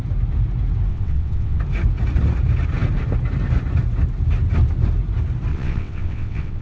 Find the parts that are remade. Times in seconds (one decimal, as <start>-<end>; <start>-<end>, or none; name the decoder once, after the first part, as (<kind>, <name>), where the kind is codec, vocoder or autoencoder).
0.9-1.6 (vocoder, WaveNeXt); 5.5-6.6

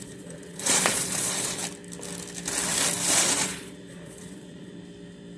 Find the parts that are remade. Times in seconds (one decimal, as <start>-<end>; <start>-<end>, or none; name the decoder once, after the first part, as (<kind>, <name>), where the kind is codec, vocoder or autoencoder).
0.0-1.6 (vocoder, Vocos); 3.2-4.7